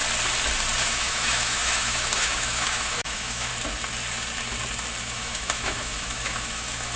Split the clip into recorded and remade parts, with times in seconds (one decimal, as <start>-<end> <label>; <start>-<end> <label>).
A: 0.0-0.8 recorded; 0.8-3.5 remade; 3.5-5.0 recorded; 5.0-7.0 remade